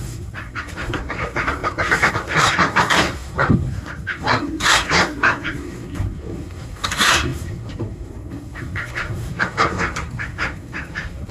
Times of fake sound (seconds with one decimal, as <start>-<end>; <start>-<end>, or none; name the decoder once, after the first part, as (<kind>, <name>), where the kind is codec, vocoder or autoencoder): 0.0-11.3 (codec, SNAC)